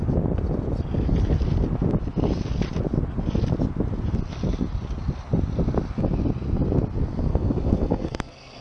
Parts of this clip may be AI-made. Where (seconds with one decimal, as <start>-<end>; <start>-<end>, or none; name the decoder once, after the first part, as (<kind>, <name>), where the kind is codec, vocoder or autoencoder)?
7.3-8.6 (codec, SNAC)